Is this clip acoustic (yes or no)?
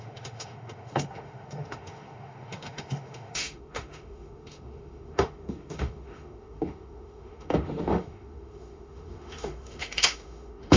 no